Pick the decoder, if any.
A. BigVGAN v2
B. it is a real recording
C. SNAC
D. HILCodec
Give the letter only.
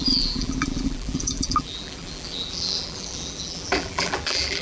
A